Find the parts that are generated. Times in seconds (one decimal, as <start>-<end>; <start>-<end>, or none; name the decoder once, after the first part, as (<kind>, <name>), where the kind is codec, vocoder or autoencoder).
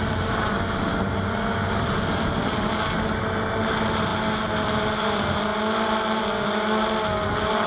none